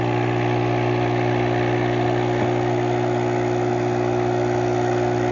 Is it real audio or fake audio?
real